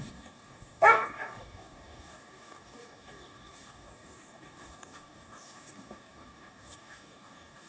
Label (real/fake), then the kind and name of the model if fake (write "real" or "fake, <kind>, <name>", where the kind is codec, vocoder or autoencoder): fake, codec, DAC